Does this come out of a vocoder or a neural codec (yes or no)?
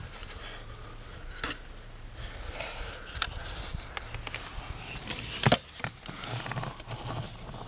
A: no